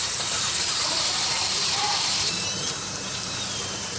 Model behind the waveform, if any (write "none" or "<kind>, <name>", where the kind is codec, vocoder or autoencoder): vocoder, BigVGAN v2